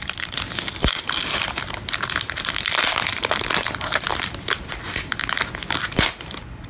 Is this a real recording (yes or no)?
no